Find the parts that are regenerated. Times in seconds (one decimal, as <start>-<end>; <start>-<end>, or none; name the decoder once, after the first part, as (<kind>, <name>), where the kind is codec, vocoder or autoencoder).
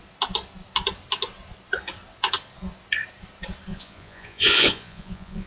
3.7-5.5 (vocoder, Vocos)